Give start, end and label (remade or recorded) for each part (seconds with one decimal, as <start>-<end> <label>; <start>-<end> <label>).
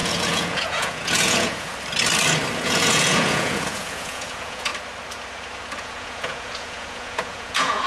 0.0-1.7 remade; 1.7-2.6 recorded; 2.6-4.7 remade; 4.7-5.8 recorded; 5.8-7.9 remade